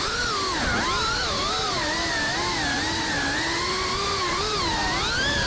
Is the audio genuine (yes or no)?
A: yes